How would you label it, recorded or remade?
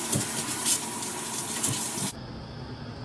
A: recorded